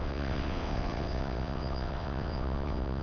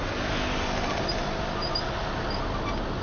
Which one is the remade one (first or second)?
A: first